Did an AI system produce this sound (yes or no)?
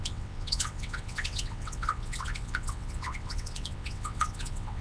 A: yes